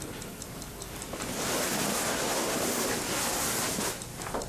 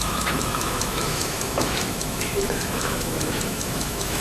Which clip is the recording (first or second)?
first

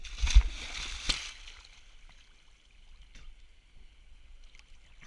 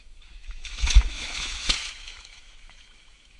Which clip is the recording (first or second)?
first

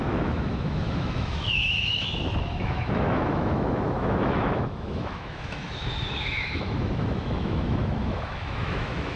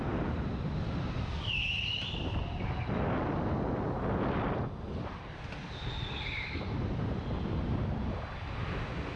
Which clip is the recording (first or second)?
second